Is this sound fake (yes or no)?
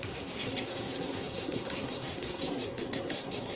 yes